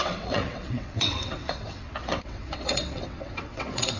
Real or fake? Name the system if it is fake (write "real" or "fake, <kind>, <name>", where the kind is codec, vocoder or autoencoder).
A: fake, vocoder, WaveNeXt